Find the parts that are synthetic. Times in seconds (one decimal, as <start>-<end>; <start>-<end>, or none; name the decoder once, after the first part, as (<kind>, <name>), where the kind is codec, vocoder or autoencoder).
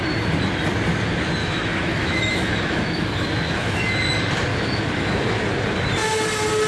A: 1.4-3.8 (autoencoder, DAC-VAE); 4.5-5.2